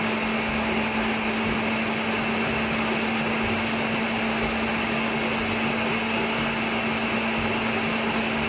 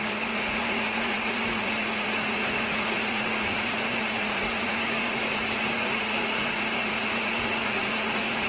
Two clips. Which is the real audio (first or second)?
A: first